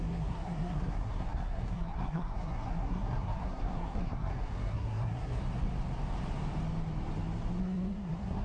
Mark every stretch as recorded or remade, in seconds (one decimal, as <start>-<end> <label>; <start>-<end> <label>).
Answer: 0.0-5.4 remade; 5.4-7.6 recorded; 7.6-8.4 remade